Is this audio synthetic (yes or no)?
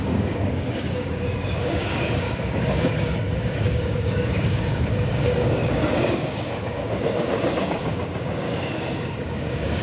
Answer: yes